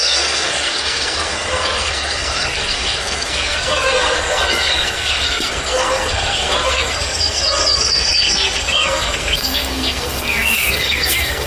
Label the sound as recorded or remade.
remade